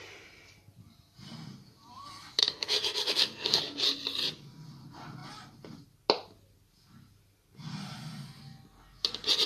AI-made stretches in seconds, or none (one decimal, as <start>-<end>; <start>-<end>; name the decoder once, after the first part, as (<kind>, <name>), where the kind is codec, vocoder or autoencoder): 2.4-3.6 (codec, SNAC)